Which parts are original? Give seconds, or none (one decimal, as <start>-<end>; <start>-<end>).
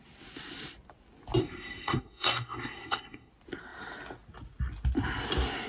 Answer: 0.0-1.4; 3.3-5.7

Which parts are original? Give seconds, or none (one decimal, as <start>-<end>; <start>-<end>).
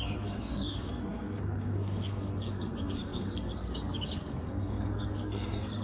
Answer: none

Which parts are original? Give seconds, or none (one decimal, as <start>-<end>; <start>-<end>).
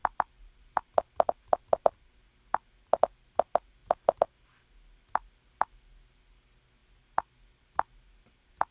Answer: 0.0-8.7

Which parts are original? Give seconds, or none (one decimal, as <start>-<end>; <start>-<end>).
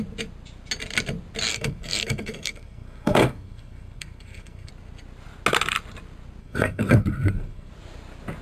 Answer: 0.0-1.5; 4.7-6.4; 7.7-8.4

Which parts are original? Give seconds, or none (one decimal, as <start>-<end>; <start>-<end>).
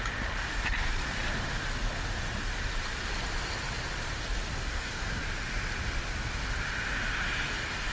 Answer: 0.0-4.6; 5.2-7.9